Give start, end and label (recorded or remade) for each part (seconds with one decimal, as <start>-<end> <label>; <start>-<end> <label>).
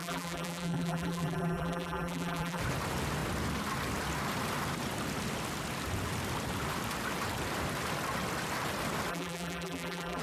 0.0-2.6 remade; 2.6-9.1 recorded; 9.1-10.2 remade